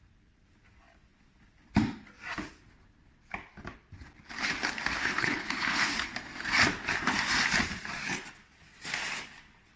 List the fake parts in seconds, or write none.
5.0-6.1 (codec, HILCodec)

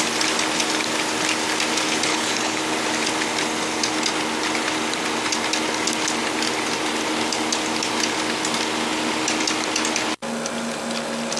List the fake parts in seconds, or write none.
2.1-2.6 (codec, HILCodec)

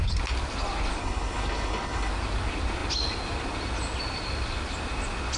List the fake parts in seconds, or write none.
1.0-2.1 (codec, HILCodec)

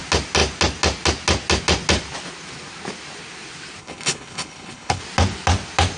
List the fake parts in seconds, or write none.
3.8-5.0 (codec, HILCodec)

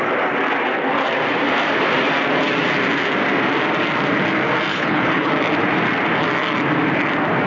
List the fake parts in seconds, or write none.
4.7-5.3 (codec, HILCodec)

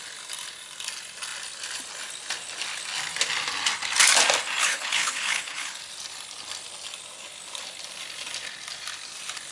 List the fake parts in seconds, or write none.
4.6-5.8 (codec, HILCodec)

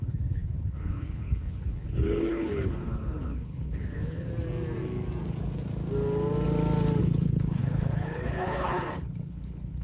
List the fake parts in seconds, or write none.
0.0-4.3 (codec, HILCodec); 7.0-9.8